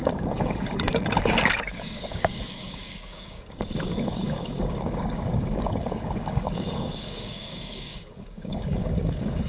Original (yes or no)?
no